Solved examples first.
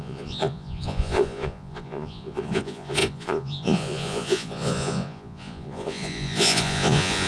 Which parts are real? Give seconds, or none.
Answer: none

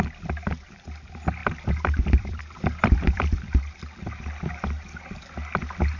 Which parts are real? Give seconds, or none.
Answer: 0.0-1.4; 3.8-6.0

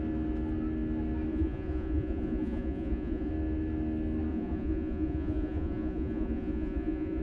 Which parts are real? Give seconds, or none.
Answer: 0.0-1.3; 3.3-4.3

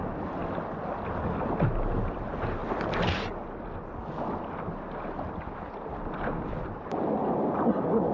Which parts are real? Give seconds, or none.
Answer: 0.0-8.1

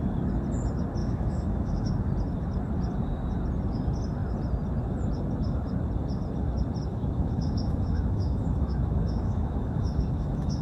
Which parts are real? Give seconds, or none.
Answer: 0.0-1.0; 1.9-6.9